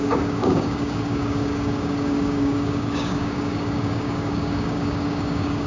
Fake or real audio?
fake